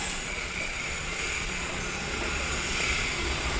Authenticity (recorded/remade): remade